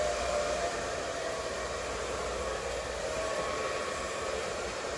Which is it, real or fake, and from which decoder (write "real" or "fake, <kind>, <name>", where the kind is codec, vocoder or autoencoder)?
fake, vocoder, BigVGAN v2